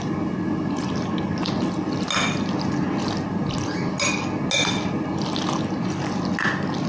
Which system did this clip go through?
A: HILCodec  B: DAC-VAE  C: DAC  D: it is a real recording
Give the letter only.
D